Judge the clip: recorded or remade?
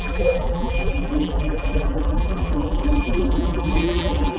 remade